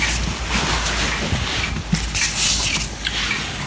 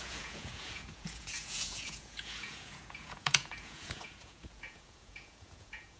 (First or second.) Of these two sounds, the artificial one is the second